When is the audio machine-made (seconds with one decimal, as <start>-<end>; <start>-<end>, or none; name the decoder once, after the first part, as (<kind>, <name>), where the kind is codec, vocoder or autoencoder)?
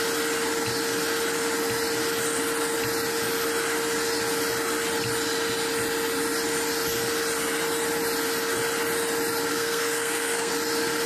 9.5-10.5 (codec, SNAC)